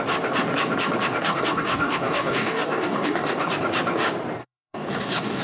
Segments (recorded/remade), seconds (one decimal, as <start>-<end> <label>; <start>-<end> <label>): 0.0-1.2 recorded; 1.2-3.5 remade; 3.5-4.4 recorded; 4.4-5.4 remade